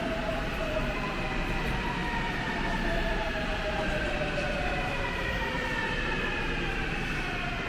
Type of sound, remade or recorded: recorded